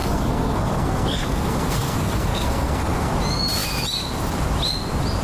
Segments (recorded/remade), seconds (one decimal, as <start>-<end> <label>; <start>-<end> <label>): 0.0-3.1 remade; 3.1-5.2 recorded